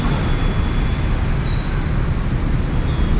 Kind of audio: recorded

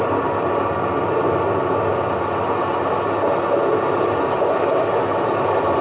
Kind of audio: recorded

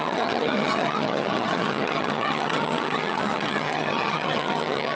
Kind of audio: remade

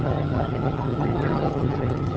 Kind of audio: remade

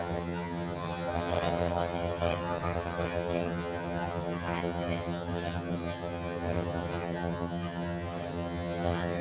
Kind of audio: remade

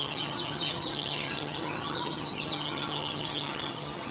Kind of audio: remade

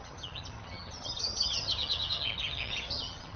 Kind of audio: remade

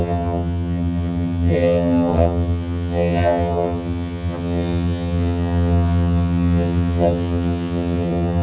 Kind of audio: remade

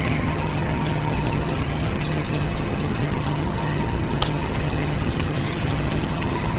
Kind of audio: remade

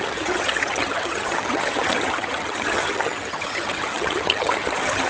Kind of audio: remade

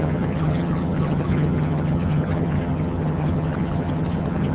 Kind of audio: remade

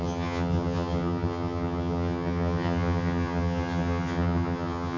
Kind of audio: remade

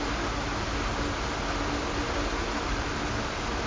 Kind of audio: recorded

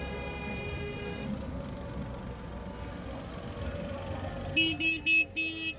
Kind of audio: recorded